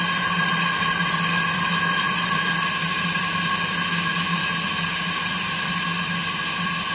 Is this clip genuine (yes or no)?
yes